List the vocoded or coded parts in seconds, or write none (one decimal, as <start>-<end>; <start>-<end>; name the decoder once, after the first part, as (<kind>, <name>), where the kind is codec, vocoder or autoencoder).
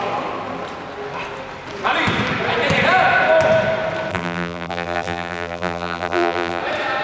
4.1-6.6 (vocoder, BigVGAN v2)